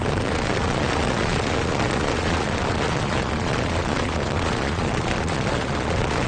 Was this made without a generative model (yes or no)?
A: no